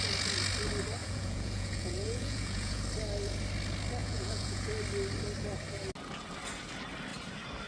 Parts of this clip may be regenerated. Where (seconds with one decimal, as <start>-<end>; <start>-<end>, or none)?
1.0-2.8; 4.0-4.7